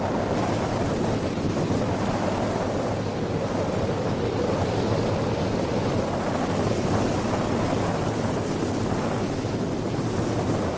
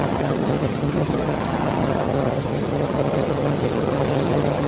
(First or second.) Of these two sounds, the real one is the first